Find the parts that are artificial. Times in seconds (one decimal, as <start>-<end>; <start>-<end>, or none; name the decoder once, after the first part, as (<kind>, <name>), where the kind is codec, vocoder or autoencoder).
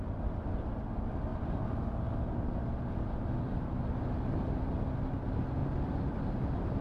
5.6-6.8 (vocoder, BigVGAN v2)